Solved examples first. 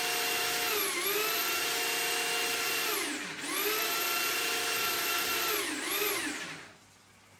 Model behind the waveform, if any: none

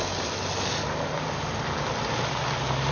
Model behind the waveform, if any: none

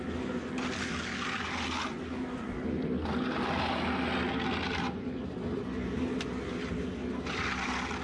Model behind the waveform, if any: none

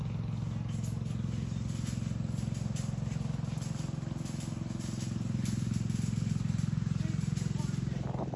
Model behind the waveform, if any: none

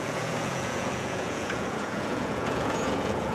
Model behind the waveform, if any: vocoder, Vocos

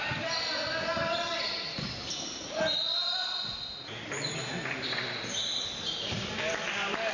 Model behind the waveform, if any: none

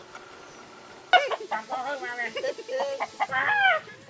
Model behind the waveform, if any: none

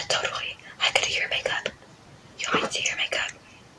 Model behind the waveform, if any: vocoder, BigVGAN v2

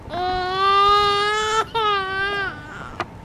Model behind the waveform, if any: none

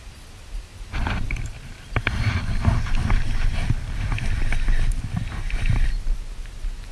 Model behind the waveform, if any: none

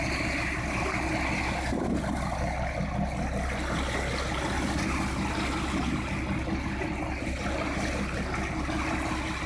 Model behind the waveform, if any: none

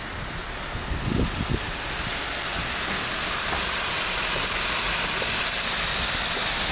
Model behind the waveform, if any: none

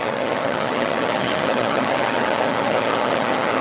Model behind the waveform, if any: vocoder, HiFi-GAN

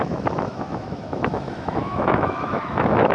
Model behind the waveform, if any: autoencoder, DAC-VAE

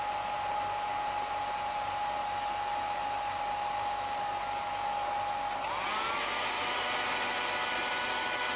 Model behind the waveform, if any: none